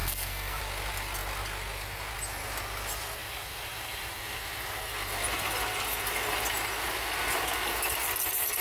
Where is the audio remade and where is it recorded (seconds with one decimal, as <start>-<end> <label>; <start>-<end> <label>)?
0.0-0.6 remade; 0.6-8.6 recorded